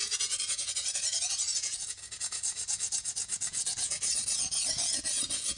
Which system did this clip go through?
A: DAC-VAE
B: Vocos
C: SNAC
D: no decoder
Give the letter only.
B